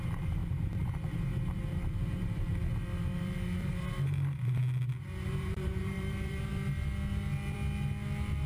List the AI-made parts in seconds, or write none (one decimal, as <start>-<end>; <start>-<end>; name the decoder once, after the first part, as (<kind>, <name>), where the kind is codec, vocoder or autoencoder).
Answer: 0.0-4.6 (vocoder, BigVGAN v2); 5.3-6.5